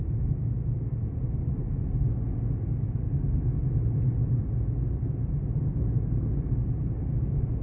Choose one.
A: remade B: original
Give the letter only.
B